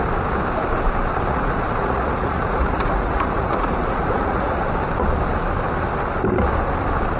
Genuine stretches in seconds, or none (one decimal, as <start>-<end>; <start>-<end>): 0.0-1.3; 4.7-7.2